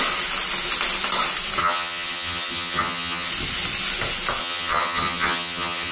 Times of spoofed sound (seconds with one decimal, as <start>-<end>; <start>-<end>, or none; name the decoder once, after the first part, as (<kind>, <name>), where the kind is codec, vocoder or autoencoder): 1.6-3.3 (vocoder, HiFi-GAN); 4.4-5.9